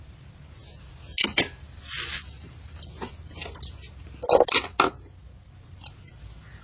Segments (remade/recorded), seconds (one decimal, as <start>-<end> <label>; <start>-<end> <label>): 0.0-6.6 recorded